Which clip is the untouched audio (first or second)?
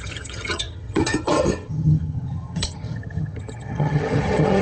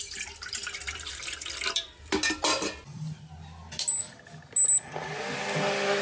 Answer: second